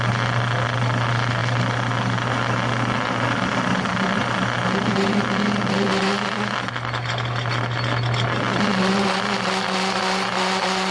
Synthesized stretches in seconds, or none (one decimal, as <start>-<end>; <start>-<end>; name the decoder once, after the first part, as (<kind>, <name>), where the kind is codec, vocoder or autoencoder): none